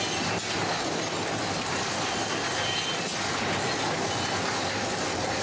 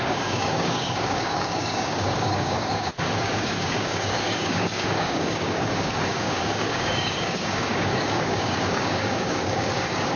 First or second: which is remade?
second